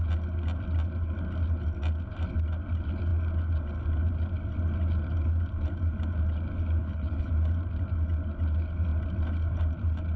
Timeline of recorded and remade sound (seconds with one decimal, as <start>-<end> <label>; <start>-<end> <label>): 0.0-6.8 recorded; 6.8-7.3 remade; 7.3-10.2 recorded